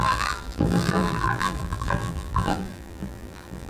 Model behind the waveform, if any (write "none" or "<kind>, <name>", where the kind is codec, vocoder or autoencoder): vocoder, BigVGAN v2